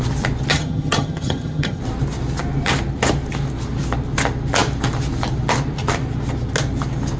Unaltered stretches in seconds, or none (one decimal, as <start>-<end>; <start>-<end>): 0.0-0.5; 1.8-7.2